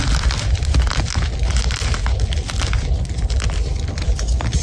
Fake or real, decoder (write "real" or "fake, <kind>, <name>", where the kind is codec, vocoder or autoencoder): real